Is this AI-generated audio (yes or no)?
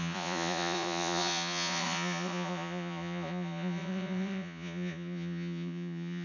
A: yes